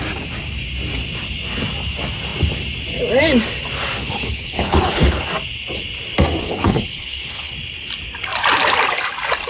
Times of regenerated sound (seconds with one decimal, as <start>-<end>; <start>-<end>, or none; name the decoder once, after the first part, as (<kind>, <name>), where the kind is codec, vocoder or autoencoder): 4.0-5.2 (codec, HILCodec); 6.4-7.5